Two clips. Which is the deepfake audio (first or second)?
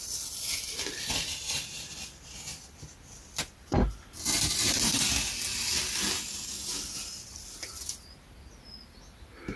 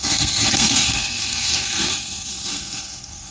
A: second